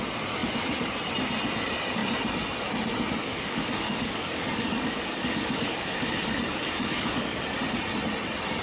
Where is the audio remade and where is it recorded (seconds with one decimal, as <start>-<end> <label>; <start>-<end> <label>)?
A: 0.0-3.2 recorded; 3.2-7.4 remade; 7.4-8.6 recorded